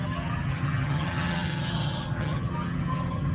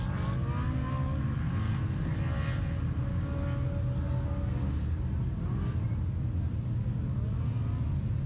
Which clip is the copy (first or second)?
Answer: first